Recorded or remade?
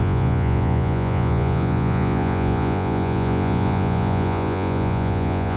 remade